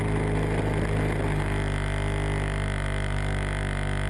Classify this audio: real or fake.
real